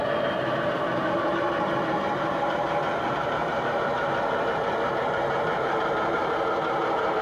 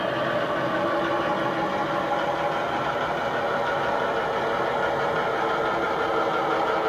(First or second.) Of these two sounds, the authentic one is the second